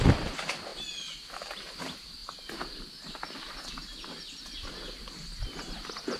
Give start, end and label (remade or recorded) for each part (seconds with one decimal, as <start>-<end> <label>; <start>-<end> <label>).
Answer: 0.0-6.2 recorded